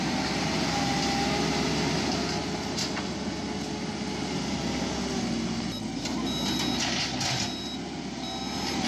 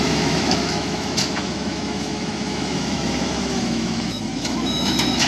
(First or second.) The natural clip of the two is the first